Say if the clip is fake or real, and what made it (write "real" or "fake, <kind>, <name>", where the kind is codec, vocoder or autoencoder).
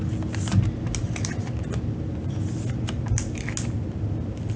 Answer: real